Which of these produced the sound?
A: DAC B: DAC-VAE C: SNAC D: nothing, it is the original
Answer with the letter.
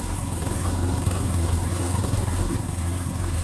C